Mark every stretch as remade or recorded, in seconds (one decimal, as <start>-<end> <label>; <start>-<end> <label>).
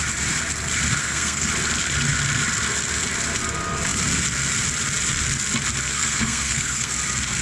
0.0-1.0 recorded; 1.0-1.5 remade; 1.5-5.9 recorded; 5.9-6.9 remade; 6.9-7.4 recorded